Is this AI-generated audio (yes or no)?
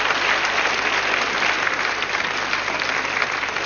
no